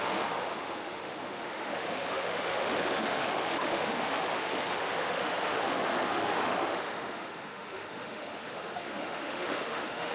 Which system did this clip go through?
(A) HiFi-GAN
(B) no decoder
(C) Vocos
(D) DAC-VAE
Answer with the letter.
D